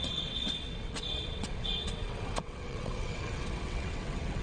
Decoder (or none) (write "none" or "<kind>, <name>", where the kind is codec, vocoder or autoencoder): vocoder, WaveNeXt